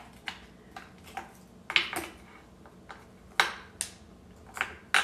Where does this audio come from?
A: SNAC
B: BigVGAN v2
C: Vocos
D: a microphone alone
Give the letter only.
D